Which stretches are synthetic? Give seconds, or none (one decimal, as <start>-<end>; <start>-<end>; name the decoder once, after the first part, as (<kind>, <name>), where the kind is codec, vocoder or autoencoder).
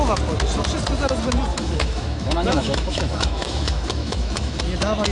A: 1.5-4.6 (autoencoder, DAC-VAE)